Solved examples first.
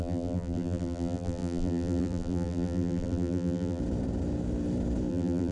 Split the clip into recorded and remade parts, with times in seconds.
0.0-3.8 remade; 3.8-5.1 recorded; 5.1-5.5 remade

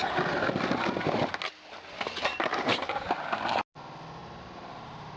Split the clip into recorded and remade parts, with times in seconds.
0.0-0.5 remade; 0.5-2.3 recorded; 2.3-3.1 remade; 3.1-4.2 recorded; 4.2-5.2 remade